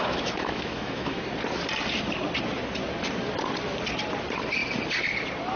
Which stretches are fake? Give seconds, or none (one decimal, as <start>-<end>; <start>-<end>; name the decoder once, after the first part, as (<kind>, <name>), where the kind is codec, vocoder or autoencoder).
0.0-1.2 (autoencoder, DAC-VAE)

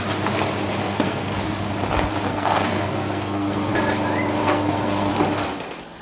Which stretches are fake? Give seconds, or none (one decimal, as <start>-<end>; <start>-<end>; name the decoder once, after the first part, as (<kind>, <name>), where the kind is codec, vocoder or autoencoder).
0.8-1.4 (codec, SNAC); 2.3-3.7; 4.4-5.1

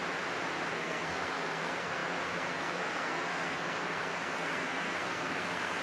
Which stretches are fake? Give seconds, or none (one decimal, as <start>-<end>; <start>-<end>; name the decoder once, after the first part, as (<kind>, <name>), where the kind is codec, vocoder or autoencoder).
0.7-5.8 (codec, SNAC)

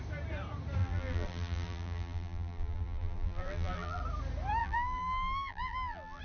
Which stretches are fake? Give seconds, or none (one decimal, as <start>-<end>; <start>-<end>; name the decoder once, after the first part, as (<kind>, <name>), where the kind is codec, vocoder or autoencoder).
0.8-4.0 (vocoder, BigVGAN v2); 4.6-6.2

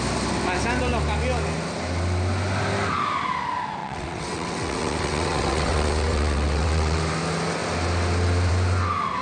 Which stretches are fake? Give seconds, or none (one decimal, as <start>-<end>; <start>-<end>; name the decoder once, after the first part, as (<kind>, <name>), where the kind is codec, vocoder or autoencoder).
3.8-7.0 (vocoder, WaveNeXt)

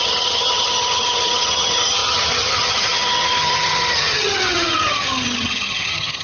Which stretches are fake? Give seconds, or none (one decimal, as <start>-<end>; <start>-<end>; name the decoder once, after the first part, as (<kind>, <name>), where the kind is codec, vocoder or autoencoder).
0.0-6.2 (vocoder, HiFi-GAN)